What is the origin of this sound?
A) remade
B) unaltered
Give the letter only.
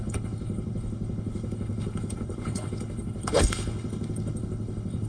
A